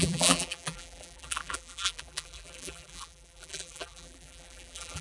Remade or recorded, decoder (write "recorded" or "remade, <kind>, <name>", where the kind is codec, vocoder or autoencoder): remade, vocoder, BigVGAN v2